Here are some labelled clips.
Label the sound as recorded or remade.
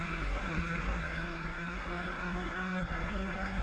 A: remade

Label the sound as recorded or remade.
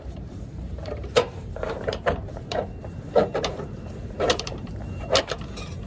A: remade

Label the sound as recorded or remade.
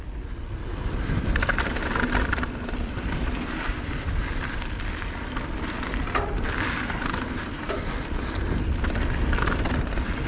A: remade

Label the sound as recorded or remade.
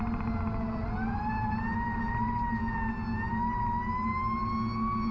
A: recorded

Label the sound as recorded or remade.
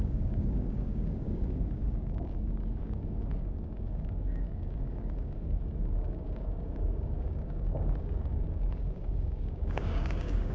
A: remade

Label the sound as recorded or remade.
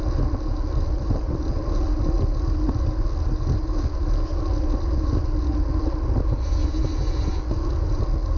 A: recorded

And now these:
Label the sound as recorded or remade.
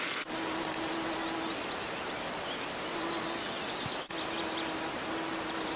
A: recorded